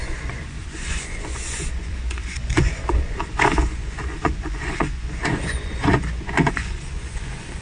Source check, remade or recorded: remade